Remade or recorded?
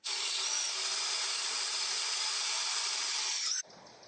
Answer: recorded